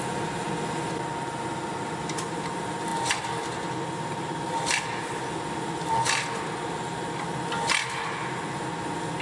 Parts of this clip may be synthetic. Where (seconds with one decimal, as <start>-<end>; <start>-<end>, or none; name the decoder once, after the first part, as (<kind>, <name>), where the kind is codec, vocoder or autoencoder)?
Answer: none

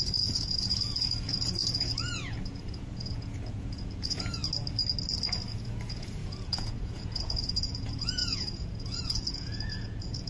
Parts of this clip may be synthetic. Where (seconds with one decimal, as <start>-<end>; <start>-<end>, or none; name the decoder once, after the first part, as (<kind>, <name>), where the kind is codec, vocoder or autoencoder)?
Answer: 0.0-4.4 (vocoder, Vocos); 5.3-10.3

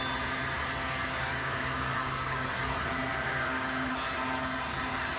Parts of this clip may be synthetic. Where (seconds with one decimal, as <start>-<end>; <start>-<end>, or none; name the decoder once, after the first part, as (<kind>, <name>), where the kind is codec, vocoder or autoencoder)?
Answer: 1.3-2.5 (codec, DAC); 3.1-3.9

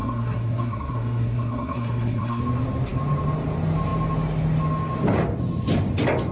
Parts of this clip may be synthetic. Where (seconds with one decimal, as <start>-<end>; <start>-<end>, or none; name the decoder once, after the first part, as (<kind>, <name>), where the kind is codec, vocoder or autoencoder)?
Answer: 0.0-2.4 (codec, SNAC)